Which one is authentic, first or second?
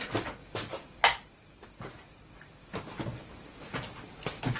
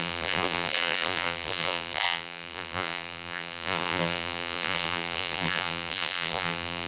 first